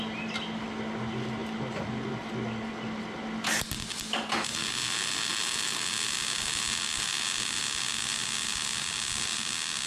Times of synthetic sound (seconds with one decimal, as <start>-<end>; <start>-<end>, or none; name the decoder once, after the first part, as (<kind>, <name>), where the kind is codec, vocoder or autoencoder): none